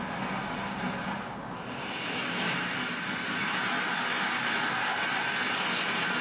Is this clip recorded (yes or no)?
yes